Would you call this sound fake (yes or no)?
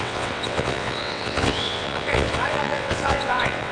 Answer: yes